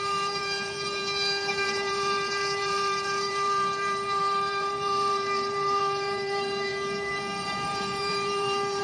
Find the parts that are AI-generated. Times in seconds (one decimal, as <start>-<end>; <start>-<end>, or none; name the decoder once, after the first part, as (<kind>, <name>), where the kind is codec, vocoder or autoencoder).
0.0-8.8 (vocoder, BigVGAN v2)